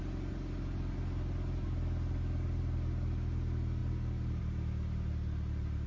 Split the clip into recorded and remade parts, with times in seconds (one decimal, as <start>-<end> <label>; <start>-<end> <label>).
0.0-5.9 recorded